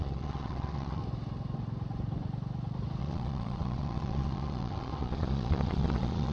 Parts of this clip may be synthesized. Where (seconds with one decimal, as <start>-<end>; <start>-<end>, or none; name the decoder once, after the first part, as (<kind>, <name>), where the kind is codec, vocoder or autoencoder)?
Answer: 0.0-1.0 (vocoder, Vocos); 3.0-6.3

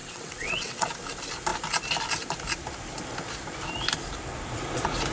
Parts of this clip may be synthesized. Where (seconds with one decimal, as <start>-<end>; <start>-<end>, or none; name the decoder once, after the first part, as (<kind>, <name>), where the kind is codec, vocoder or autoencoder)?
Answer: 0.0-0.9 (vocoder, WaveNeXt)

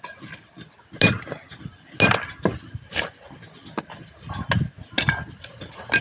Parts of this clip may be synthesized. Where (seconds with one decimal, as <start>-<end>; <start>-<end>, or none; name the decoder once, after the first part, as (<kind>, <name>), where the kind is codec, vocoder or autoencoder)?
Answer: none

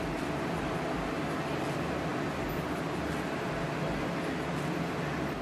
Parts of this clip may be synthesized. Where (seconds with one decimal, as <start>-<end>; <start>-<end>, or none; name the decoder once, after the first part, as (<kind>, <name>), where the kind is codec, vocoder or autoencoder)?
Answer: none

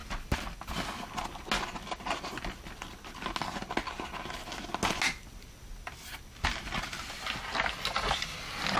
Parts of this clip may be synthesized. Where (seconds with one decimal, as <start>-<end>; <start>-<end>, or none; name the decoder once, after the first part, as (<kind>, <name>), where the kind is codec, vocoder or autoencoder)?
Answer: none

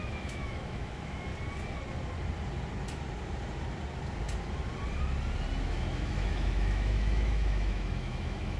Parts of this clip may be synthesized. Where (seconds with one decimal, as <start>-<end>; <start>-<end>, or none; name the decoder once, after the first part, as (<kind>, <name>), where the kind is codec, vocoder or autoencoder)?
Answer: 0.0-1.3 (autoencoder, DAC-VAE); 5.6-8.6